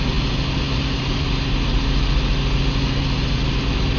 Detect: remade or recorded recorded